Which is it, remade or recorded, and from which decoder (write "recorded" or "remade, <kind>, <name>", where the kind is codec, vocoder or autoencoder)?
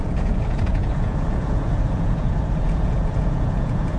remade, vocoder, Vocos